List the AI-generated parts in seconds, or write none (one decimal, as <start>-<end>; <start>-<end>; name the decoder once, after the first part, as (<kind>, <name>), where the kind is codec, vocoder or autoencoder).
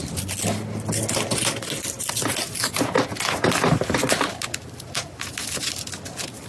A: none